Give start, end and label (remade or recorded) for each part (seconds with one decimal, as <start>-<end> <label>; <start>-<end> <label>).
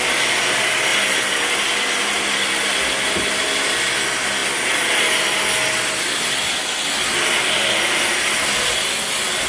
0.0-9.5 recorded